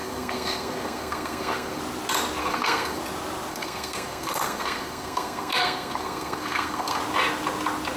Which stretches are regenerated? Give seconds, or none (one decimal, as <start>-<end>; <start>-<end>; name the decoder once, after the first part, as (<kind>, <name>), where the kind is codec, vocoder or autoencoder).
0.0-1.8 (codec, SNAC); 2.4-3.0; 3.5-7.0